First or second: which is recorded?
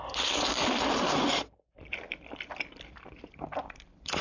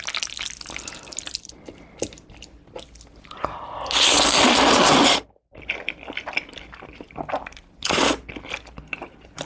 second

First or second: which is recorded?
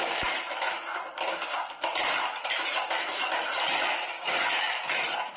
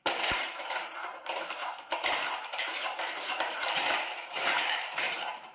first